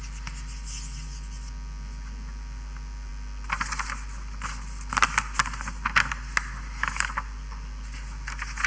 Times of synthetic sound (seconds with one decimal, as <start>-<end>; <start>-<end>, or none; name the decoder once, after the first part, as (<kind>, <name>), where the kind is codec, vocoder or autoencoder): none